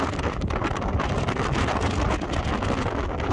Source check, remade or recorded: recorded